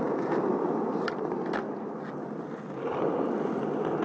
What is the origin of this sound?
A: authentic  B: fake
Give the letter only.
A